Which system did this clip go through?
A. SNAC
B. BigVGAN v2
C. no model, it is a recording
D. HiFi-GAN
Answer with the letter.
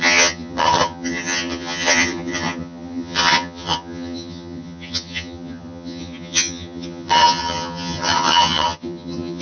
D